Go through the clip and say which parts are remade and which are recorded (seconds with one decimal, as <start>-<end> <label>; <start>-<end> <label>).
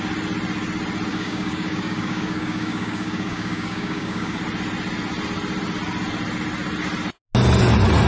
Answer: 0.0-1.1 recorded; 1.1-4.4 remade; 4.4-8.1 recorded